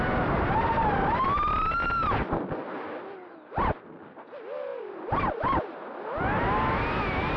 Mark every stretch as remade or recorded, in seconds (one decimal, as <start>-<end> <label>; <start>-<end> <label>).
0.0-7.4 recorded